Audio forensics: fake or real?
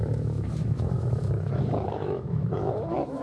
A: fake